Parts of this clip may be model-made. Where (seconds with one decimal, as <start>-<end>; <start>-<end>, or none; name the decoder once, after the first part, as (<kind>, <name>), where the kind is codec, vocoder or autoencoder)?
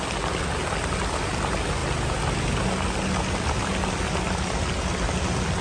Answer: none